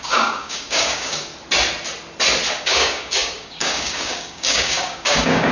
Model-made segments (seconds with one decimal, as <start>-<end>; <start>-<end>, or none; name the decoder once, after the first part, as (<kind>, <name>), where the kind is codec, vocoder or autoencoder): 0.0-1.3 (codec, DAC); 2.6-5.5